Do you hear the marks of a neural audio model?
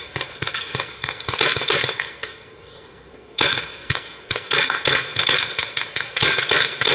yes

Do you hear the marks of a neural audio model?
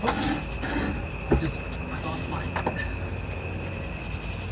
no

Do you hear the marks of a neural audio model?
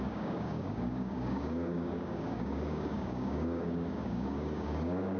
yes